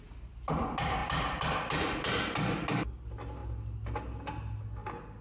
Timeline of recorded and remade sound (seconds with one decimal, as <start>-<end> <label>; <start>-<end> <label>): 0.0-5.2 recorded